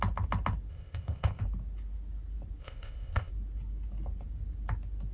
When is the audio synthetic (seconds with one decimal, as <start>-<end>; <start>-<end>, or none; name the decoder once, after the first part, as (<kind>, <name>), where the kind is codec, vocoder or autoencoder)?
0.7-1.4 (codec, ZipCodec); 2.6-3.3